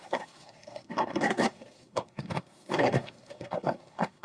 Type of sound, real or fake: fake